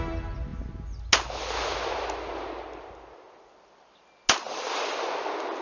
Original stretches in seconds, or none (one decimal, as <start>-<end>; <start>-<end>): 0.0-5.6